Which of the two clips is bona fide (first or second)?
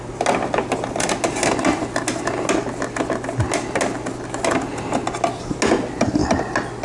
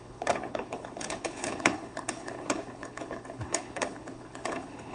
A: first